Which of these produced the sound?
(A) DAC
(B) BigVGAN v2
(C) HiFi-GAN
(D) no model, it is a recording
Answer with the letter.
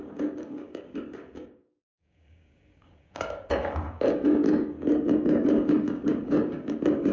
A